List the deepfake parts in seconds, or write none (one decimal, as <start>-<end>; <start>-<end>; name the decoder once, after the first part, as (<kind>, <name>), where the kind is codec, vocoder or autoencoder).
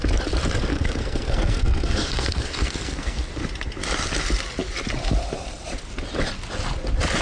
0.7-3.3 (codec, SNAC)